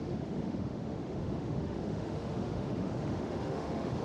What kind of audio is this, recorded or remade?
remade